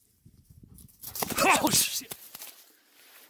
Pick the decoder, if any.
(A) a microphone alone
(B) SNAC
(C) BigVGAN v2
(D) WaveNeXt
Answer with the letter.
A